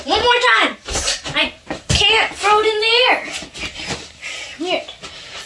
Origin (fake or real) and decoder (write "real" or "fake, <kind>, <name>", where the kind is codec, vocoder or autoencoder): real